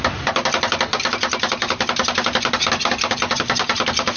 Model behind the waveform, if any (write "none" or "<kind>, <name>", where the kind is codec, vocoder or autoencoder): none